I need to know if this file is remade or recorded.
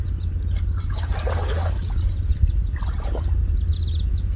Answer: recorded